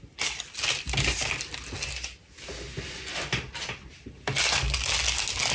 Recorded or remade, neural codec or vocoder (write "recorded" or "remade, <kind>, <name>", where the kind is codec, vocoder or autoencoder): recorded